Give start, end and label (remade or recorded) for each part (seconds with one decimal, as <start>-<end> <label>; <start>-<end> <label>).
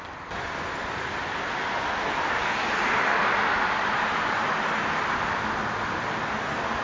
0.0-6.8 recorded